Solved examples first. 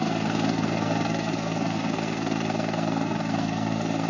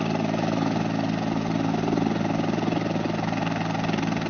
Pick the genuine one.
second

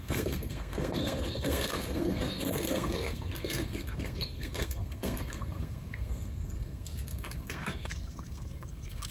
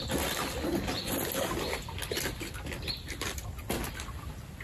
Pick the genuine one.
second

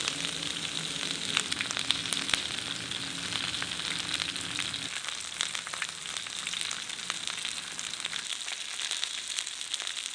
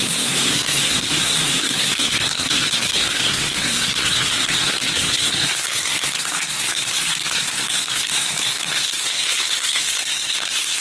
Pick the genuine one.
first